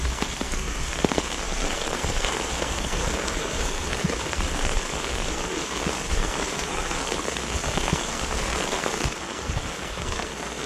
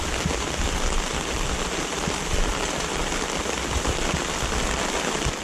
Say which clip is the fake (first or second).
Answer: first